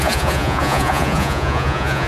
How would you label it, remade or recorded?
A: remade